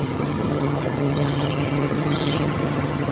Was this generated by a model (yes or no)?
yes